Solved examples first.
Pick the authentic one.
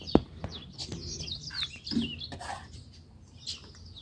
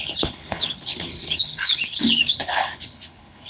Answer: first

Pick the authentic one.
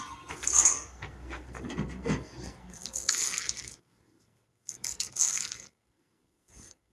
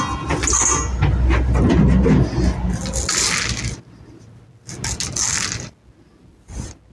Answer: second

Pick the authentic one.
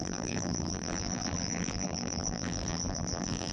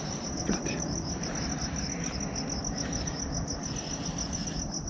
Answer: second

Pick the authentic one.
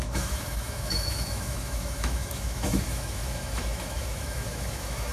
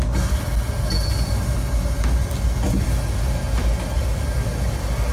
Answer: second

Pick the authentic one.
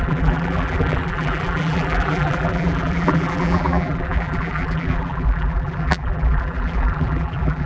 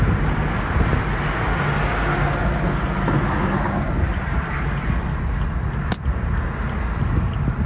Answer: second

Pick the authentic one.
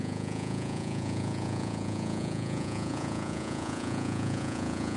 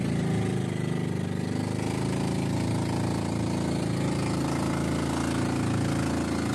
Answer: second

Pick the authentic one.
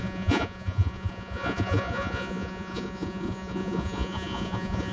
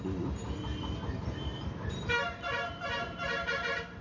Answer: second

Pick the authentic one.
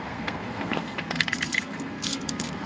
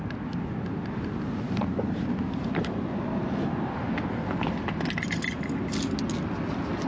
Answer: second